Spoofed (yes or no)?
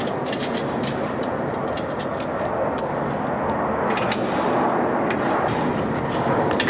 no